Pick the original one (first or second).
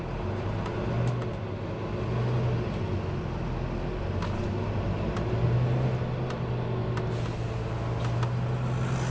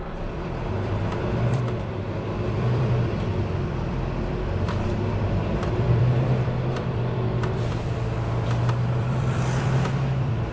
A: first